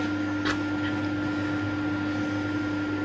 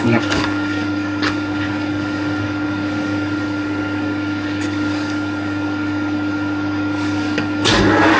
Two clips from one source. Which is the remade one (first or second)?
second